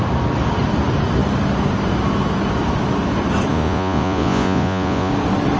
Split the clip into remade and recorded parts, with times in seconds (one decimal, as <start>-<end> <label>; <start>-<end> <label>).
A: 0.0-3.5 recorded; 3.5-5.1 remade; 5.1-5.6 recorded